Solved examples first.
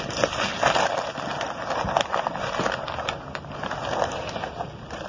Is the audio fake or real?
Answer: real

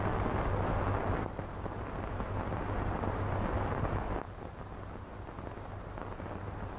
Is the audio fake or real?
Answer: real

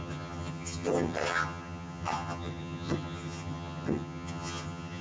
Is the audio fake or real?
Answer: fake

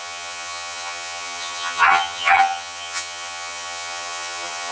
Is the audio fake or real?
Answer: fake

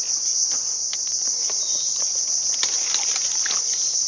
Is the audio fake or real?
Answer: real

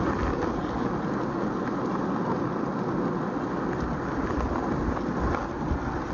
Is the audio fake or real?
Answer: real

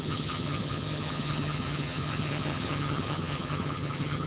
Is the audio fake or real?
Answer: fake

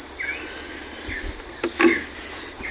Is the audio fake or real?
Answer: real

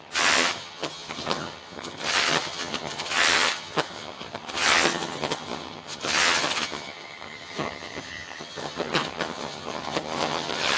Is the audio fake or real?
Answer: fake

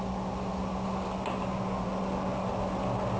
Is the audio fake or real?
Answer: real